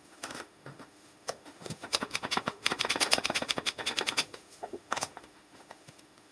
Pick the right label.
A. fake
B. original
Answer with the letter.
A